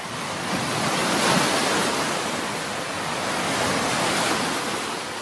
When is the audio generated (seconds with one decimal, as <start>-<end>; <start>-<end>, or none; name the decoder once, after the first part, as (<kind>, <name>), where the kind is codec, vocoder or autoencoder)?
none